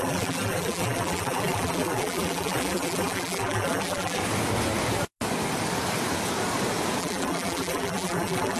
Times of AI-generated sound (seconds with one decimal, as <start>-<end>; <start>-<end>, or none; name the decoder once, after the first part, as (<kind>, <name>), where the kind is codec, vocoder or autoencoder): 0.0-4.2 (vocoder, BigVGAN v2); 7.0-8.6